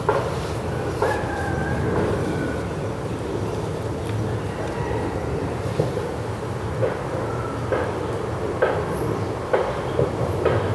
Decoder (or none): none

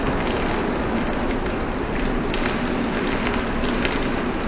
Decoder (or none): none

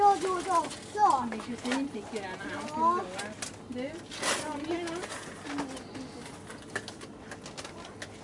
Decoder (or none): none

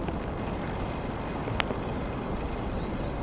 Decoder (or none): none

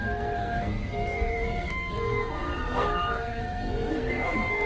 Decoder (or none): codec, SNAC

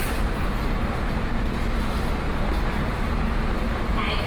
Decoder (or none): none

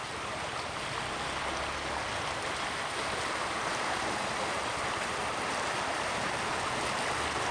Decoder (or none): none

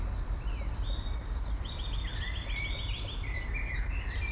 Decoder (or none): none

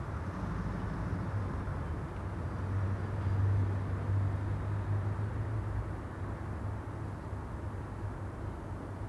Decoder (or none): none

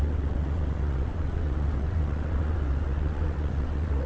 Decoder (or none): vocoder, WaveNeXt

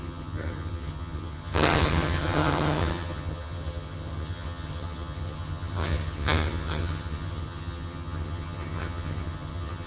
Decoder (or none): vocoder, HiFi-GAN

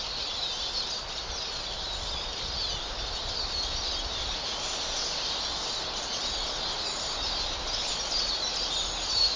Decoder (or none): none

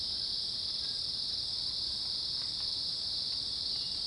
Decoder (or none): none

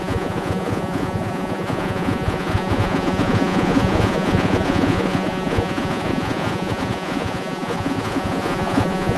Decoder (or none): vocoder, Vocos